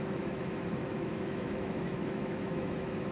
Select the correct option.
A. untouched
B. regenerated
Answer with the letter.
B